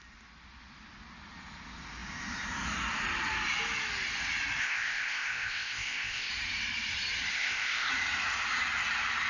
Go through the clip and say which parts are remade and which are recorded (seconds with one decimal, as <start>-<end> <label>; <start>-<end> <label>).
0.0-4.6 recorded; 4.6-6.3 remade; 6.3-7.3 recorded; 7.3-7.9 remade; 7.9-9.3 recorded